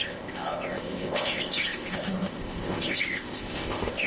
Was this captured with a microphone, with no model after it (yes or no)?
no